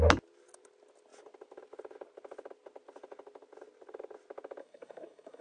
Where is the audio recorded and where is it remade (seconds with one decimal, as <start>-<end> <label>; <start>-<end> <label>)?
0.0-4.6 recorded; 4.6-5.4 remade